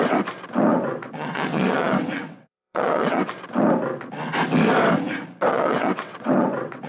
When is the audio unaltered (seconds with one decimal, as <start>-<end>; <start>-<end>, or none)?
0.0-0.7; 3.3-5.5